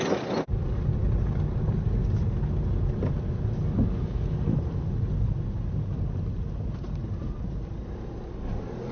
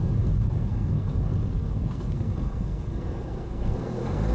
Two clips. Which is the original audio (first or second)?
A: first